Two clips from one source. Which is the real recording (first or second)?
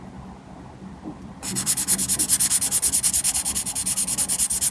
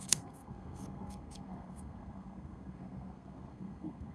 first